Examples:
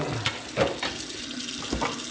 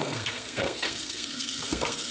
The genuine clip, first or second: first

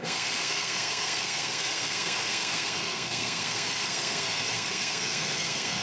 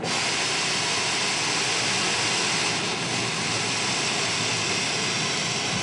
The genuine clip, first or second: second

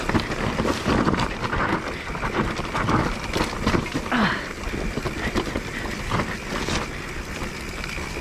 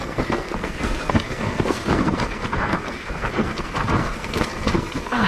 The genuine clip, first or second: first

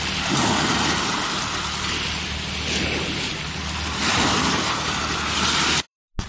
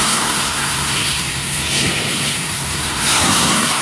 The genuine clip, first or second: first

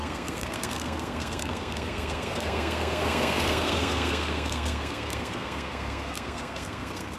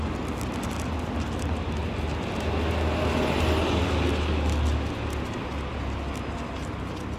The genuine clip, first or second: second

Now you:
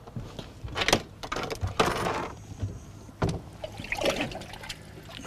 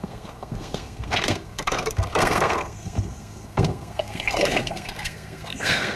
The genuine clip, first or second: first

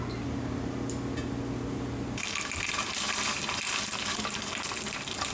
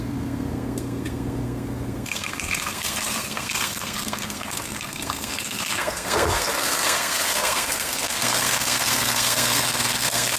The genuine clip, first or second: first